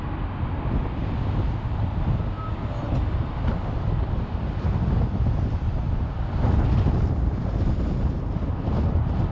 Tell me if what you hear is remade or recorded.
recorded